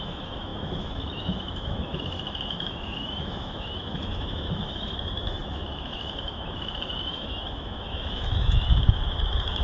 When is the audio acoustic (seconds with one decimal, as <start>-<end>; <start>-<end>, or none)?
none